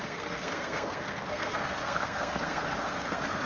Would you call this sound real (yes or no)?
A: no